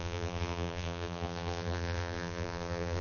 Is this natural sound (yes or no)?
no